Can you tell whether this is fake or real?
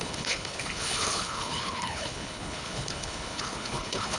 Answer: fake